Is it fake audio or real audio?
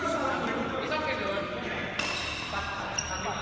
real